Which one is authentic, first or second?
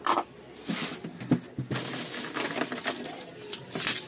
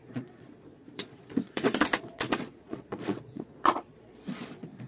first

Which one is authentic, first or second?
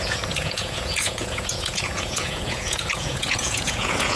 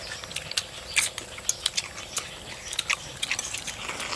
second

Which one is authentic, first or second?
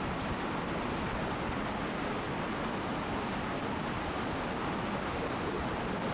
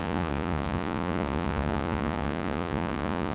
first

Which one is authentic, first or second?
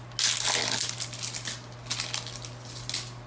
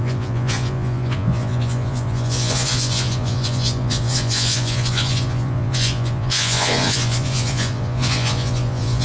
first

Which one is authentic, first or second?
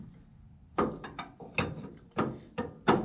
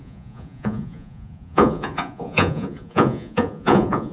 first